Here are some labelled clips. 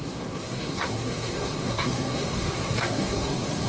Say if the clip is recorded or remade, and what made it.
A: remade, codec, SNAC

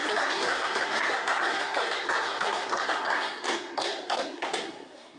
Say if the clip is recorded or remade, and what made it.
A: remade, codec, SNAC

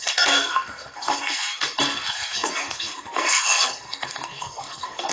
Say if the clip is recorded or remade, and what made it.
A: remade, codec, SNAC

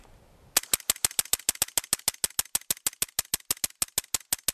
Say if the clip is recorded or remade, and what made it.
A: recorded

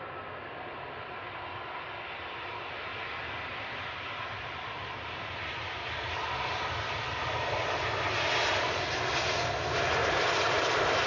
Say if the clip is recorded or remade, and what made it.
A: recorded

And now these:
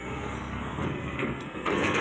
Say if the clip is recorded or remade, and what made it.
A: remade, codec, SNAC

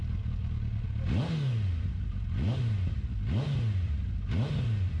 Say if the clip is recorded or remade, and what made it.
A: recorded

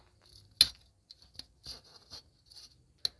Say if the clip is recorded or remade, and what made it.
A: recorded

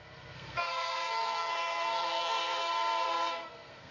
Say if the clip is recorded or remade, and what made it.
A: remade, codec, SNAC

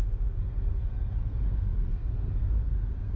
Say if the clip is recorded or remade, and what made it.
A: remade, codec, SNAC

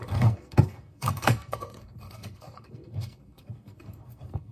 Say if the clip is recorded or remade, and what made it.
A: remade, codec, SNAC